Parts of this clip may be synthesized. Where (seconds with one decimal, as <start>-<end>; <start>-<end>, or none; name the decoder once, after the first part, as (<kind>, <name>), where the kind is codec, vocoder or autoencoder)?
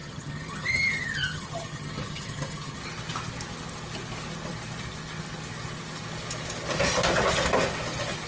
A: 0.0-2.8 (vocoder, HiFi-GAN)